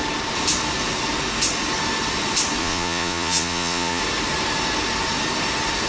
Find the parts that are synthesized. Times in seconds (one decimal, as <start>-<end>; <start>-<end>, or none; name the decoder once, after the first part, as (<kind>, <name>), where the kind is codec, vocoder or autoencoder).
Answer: 2.6-4.0 (vocoder, Vocos)